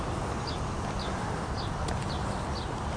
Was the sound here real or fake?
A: real